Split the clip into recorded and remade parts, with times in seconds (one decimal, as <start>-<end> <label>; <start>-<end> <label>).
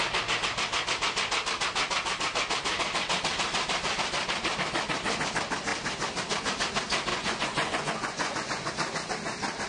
0.0-7.1 recorded; 7.1-8.7 remade; 8.7-9.7 recorded